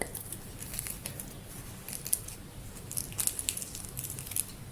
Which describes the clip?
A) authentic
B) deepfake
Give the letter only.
A